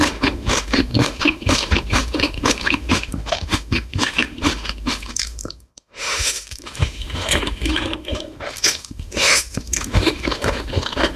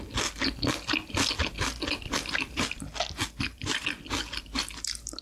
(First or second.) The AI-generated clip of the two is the first